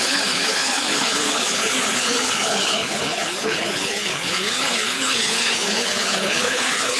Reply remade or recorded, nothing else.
remade